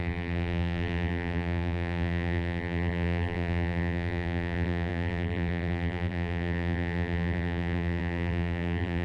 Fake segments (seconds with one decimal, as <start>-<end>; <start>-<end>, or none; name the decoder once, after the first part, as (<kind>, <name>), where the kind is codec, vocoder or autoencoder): 0.0-9.0 (vocoder, BigVGAN v2)